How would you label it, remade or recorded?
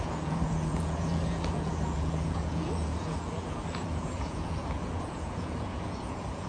remade